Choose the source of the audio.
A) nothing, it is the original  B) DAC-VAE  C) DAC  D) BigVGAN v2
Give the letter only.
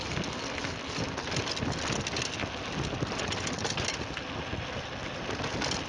A